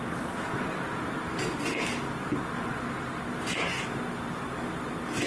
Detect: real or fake real